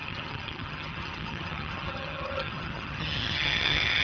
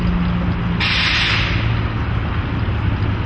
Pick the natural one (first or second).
second